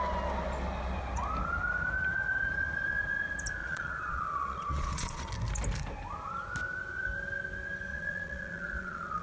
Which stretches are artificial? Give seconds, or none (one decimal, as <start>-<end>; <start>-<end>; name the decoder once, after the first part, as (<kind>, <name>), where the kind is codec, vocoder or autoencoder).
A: 3.6-5.3 (vocoder, Vocos); 7.9-9.2